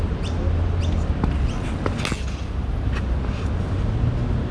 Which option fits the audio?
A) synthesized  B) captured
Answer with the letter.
B